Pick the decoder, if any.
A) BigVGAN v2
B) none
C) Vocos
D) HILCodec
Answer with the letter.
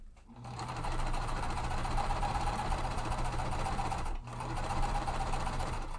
A